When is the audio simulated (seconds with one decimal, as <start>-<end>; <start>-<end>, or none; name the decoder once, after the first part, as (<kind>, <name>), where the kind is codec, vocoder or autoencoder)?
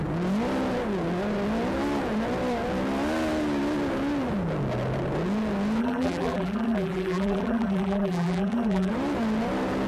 5.8-8.9 (vocoder, BigVGAN v2)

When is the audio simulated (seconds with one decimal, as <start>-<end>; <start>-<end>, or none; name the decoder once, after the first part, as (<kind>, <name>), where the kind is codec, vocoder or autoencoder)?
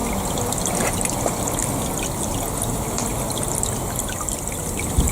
0.5-1.6 (vocoder, BigVGAN v2); 2.1-5.1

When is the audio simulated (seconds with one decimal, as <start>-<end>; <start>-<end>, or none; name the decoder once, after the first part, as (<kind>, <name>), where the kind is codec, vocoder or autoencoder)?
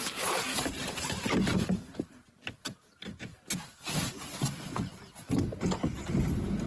3.3-4.4 (vocoder, BigVGAN v2)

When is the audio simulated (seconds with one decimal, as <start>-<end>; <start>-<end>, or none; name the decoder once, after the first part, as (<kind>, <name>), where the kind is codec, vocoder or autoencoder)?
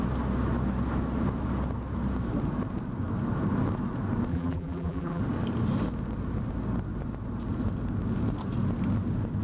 4.3-5.2 (vocoder, BigVGAN v2)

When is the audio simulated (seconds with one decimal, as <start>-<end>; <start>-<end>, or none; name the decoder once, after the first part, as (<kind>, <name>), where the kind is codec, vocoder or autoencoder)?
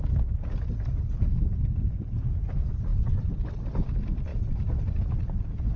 2.9-3.6 (vocoder, BigVGAN v2); 4.3-5.0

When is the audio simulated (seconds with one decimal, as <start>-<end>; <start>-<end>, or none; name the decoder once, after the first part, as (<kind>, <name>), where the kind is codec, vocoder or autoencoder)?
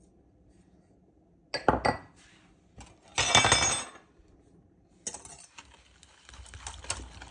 none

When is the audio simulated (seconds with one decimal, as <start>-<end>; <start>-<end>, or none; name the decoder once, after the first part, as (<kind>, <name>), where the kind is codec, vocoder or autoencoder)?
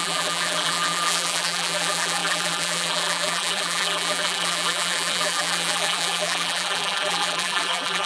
0.0-8.1 (vocoder, BigVGAN v2)